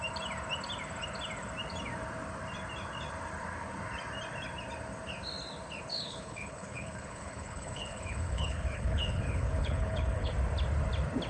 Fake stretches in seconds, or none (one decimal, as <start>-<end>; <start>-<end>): 5.9-10.3